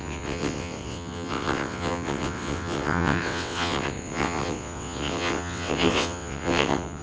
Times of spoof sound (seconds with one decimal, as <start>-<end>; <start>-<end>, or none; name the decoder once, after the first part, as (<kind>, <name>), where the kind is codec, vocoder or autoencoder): 0.0-7.0 (vocoder, WaveNeXt)